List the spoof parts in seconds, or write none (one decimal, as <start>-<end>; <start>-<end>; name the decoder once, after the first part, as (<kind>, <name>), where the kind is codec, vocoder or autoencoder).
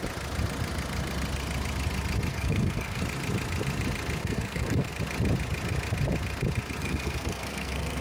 2.3-3.0 (codec, SNAC); 4.2-4.9; 6.8-8.0